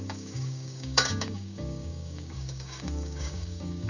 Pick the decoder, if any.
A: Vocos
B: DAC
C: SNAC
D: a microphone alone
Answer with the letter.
B